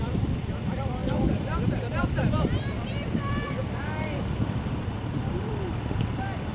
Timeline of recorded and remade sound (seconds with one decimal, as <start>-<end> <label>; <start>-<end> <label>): 0.0-6.5 remade